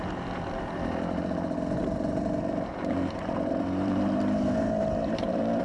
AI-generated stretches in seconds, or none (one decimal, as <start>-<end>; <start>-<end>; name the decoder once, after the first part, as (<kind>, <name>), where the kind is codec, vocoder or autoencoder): 1.8-5.6 (vocoder, BigVGAN v2)

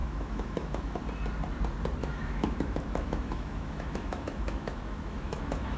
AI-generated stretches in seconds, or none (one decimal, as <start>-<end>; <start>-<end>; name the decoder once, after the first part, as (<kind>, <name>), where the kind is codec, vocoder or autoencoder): 0.0-1.0 (autoencoder, DAC-VAE); 2.0-5.8

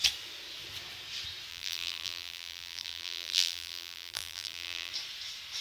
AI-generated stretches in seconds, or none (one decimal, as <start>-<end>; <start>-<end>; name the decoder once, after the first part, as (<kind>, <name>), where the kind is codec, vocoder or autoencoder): 1.5-4.9 (vocoder, BigVGAN v2)